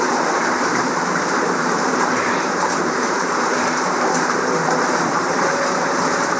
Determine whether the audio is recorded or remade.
remade